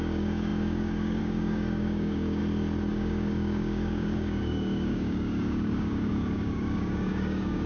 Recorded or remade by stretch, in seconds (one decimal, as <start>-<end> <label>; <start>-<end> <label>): 0.0-2.4 remade; 2.4-2.9 recorded; 2.9-7.7 remade